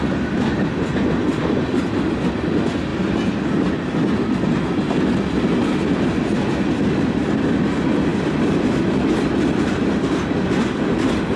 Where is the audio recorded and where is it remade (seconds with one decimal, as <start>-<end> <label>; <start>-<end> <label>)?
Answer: 0.0-8.1 recorded; 8.1-9.8 remade; 9.8-11.4 recorded